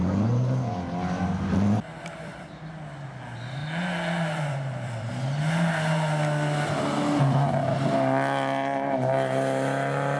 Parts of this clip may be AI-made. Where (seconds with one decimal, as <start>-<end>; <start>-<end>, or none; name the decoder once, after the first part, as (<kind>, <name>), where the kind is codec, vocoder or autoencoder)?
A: 3.6-5.1 (vocoder, BigVGAN v2)